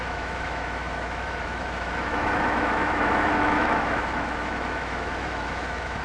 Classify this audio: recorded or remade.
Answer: remade